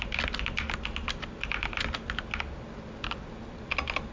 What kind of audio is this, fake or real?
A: real